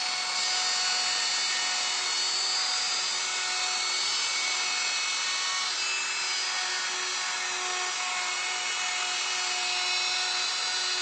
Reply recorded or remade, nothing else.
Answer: recorded